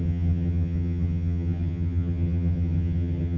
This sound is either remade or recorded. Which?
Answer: remade